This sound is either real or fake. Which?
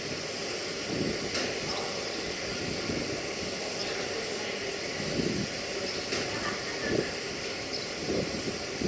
real